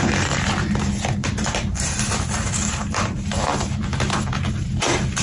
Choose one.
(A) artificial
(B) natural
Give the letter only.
A